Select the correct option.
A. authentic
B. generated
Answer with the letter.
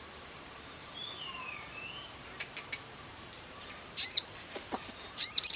B